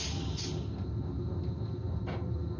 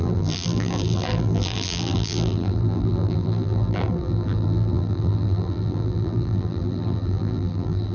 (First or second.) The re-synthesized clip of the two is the second